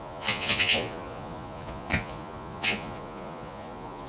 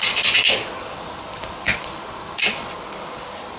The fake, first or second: first